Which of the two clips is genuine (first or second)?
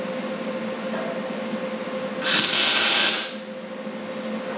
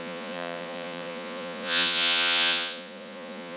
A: first